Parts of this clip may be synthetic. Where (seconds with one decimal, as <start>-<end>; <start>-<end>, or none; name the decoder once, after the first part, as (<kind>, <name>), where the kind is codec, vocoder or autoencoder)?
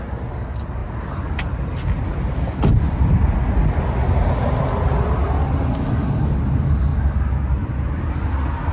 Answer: none